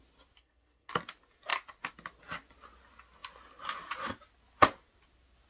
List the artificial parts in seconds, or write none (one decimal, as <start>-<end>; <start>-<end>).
0.4-0.9